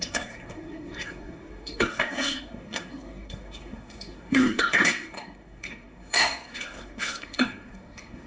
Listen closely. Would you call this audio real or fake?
fake